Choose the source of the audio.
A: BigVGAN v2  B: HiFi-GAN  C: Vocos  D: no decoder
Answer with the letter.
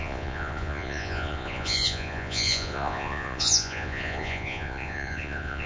C